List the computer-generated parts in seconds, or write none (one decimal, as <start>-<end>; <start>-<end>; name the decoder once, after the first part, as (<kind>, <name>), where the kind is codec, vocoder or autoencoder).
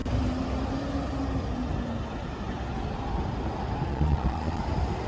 3.9-4.6 (vocoder, Vocos)